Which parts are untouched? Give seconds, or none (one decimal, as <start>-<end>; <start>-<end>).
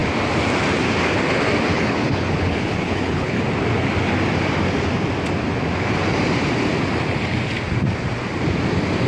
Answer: 0.0-1.7; 3.4-9.1